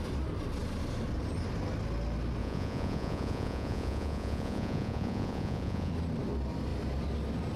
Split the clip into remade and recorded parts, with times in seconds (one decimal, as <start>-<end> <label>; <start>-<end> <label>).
0.0-2.4 recorded; 2.4-5.9 remade; 5.9-7.6 recorded